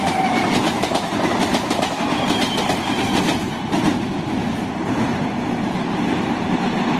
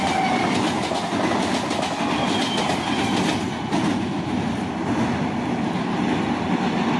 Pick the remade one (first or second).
first